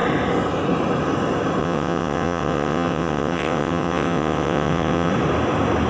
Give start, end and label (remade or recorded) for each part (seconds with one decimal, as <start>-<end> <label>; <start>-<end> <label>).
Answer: 0.0-1.6 recorded; 1.6-5.1 remade; 5.1-5.9 recorded